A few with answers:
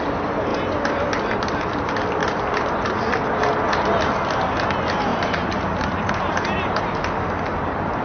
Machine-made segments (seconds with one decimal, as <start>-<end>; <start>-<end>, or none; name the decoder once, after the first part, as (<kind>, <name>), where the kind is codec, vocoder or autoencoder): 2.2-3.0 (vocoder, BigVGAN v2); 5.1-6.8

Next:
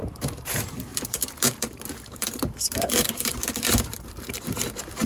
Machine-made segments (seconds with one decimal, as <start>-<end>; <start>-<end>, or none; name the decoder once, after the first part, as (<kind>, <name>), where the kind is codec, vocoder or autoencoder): 0.0-5.1 (vocoder, BigVGAN v2)

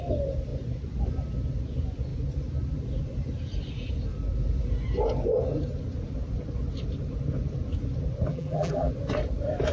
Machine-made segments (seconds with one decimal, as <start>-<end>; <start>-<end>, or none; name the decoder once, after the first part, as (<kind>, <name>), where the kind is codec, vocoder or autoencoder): 8.3-8.9 (vocoder, BigVGAN v2)